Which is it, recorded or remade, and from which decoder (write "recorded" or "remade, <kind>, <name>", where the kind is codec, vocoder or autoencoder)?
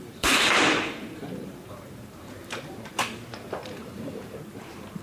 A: remade, vocoder, BigVGAN v2